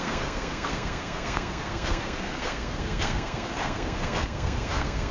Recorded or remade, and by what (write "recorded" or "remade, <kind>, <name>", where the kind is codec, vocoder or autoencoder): remade, codec, SNAC